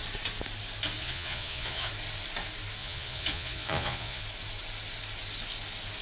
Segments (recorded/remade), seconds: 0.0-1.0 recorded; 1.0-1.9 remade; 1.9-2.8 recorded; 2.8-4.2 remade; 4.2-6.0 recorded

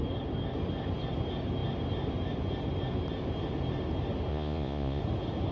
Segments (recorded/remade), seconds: 0.0-4.3 recorded; 4.3-5.0 remade; 5.0-5.5 recorded

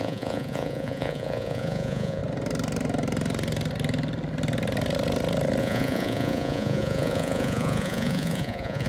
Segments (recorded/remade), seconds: 0.0-2.2 remade; 2.2-5.6 recorded; 5.6-8.9 remade

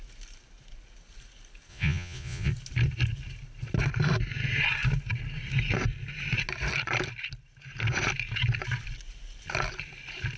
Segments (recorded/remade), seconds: 0.0-1.7 recorded; 1.7-2.5 remade; 2.5-10.4 recorded

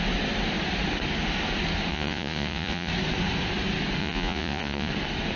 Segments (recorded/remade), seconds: 0.0-1.9 recorded; 1.9-2.9 remade; 2.9-4.0 recorded; 4.0-4.9 remade; 4.9-5.4 recorded

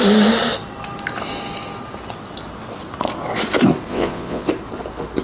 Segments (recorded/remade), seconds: 0.0-3.9 recorded; 3.9-4.5 remade; 4.5-5.2 recorded

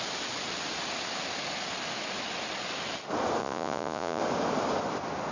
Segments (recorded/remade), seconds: 0.0-3.4 recorded; 3.4-4.2 remade; 4.2-5.3 recorded

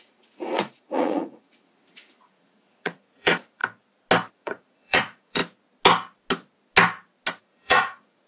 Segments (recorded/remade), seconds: 0.0-3.6 remade; 3.6-4.3 recorded; 4.3-5.4 remade; 5.4-7.4 recorded; 7.4-8.3 remade